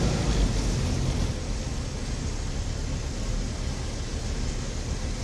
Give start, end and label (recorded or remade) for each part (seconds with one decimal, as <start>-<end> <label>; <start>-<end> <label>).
0.0-5.2 recorded